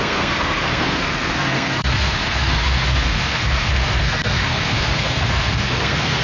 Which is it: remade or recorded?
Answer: remade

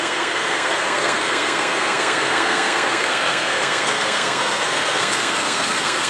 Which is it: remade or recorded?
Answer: remade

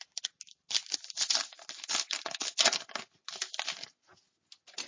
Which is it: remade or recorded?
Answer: recorded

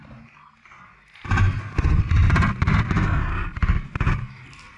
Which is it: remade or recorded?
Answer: recorded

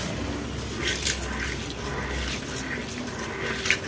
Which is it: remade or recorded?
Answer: recorded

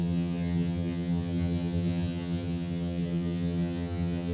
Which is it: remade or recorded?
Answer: remade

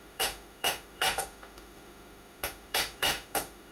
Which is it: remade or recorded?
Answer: remade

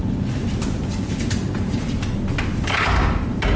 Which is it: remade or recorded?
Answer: recorded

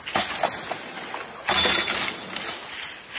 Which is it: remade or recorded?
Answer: recorded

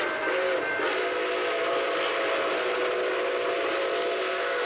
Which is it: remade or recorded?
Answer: recorded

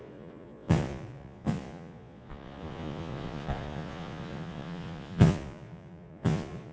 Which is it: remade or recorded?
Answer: remade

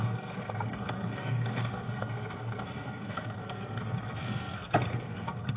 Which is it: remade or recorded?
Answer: remade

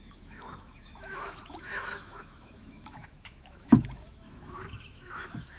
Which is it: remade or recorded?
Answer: remade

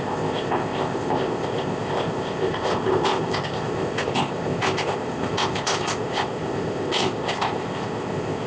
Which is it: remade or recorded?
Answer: remade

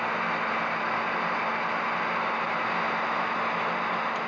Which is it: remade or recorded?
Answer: recorded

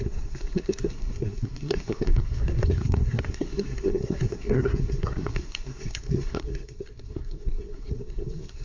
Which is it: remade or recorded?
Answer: remade